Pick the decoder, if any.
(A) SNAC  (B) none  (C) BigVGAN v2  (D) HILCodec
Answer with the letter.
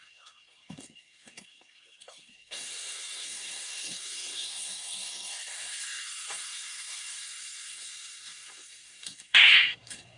A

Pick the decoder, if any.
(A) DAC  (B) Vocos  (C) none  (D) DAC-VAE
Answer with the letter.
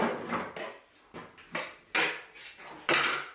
C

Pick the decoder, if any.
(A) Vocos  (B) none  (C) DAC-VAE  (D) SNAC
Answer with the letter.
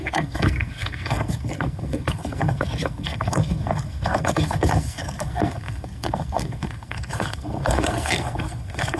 D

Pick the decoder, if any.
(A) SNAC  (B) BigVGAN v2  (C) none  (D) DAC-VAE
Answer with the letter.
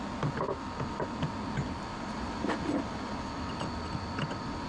C